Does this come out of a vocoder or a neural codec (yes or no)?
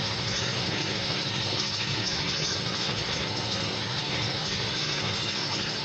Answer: yes